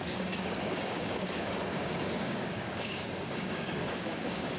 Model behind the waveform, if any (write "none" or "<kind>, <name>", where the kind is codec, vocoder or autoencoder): codec, DAC